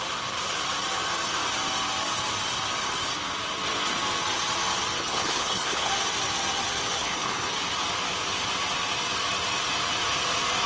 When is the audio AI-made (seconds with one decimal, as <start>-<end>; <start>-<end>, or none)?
5.0-5.9; 7.0-7.5